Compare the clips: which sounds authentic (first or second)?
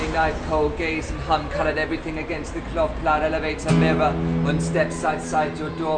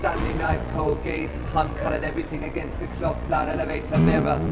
first